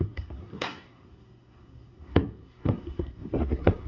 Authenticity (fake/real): fake